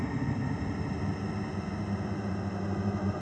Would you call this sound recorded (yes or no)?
yes